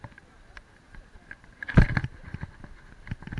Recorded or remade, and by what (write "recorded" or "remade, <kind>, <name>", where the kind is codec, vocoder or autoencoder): recorded